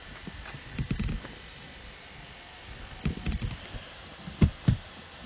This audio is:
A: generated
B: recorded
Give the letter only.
B